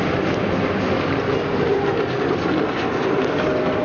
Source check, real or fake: fake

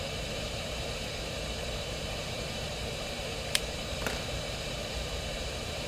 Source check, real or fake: fake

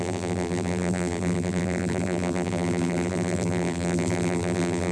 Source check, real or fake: fake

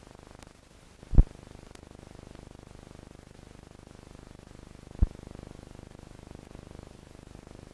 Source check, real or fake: real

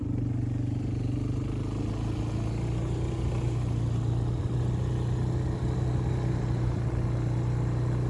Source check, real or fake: real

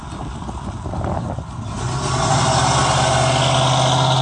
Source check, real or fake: real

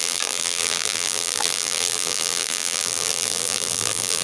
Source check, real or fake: fake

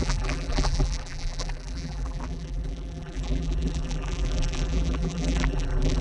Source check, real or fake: fake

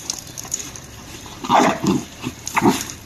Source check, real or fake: fake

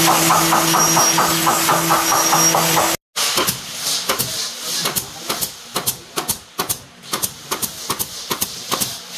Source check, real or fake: real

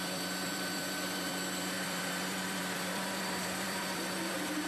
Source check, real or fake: fake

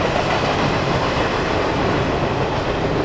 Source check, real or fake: real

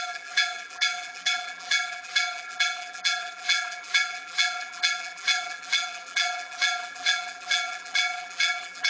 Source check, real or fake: fake